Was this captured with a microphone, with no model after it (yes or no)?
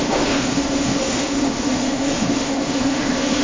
no